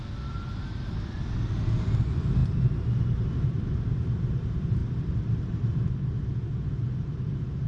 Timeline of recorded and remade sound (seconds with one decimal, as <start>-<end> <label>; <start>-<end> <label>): 0.0-7.7 recorded